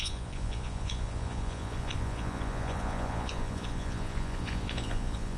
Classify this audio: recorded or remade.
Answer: remade